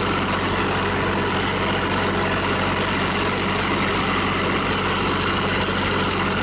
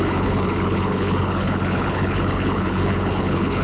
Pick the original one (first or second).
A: first